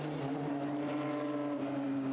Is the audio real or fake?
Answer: real